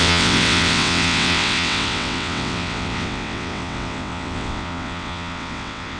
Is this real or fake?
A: fake